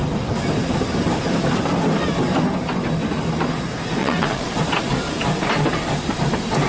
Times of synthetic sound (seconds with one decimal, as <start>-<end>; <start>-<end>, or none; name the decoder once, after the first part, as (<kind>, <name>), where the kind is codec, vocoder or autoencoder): 4.0-4.5 (vocoder, WaveNeXt)